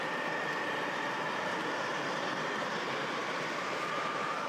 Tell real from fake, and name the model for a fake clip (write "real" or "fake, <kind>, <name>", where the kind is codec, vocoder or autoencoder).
fake, vocoder, BigVGAN v2